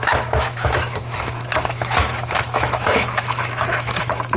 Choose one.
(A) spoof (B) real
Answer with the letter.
A